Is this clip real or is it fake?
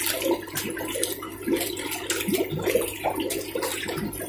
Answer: real